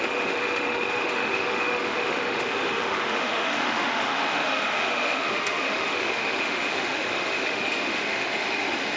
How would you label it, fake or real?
fake